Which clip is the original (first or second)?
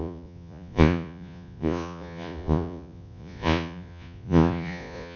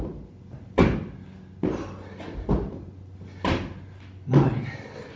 second